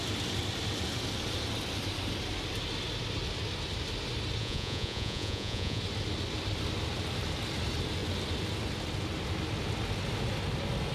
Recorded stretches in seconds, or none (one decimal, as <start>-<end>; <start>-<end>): 0.0-4.4; 5.8-10.9